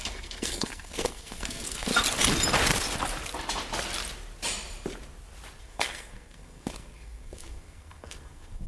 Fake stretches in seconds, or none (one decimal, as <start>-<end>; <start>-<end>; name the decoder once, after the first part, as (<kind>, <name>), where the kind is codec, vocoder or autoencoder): 0.0-1.9 (codec, SNAC); 5.6-8.7